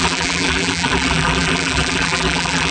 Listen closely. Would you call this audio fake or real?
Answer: fake